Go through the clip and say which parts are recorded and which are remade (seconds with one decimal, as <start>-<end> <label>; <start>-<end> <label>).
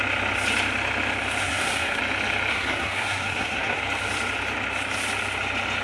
0.0-1.4 recorded; 1.4-2.0 remade; 2.0-2.5 recorded; 2.5-3.8 remade; 3.8-5.8 recorded